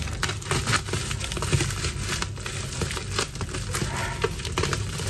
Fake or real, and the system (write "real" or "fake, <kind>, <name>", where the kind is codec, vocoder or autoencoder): real